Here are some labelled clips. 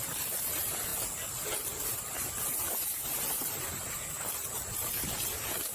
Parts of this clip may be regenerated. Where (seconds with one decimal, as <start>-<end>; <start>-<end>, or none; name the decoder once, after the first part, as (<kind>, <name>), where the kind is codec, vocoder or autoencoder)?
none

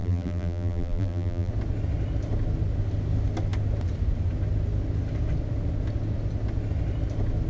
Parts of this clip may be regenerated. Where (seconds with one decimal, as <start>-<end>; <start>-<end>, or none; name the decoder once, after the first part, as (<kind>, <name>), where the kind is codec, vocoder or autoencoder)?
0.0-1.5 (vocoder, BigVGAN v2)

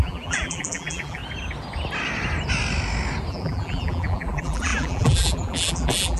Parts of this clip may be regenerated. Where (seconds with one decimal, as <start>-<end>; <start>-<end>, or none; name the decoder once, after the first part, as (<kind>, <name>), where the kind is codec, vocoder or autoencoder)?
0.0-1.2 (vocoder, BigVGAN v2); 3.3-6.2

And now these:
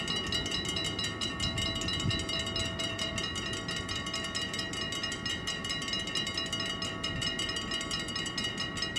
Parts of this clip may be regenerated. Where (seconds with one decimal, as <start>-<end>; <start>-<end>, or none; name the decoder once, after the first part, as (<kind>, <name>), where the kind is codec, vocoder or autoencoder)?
2.6-3.1 (vocoder, BigVGAN v2)